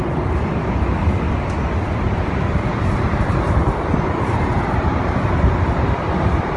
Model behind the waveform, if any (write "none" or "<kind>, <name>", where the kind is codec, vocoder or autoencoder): vocoder, BigVGAN v2